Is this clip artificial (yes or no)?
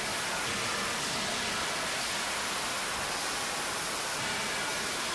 no